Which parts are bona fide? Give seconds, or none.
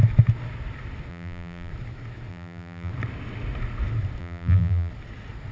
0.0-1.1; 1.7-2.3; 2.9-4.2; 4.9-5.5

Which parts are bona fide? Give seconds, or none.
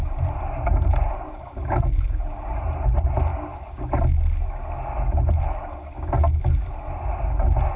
2.6-7.8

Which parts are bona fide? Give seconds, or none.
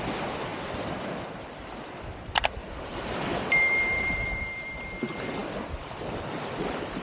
0.0-2.6; 4.9-7.0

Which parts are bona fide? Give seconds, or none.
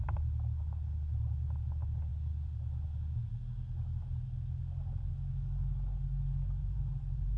0.0-6.6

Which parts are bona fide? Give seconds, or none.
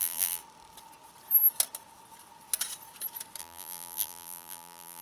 0.4-3.4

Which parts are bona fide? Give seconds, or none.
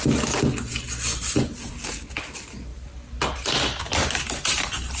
0.0-1.1; 1.7-5.0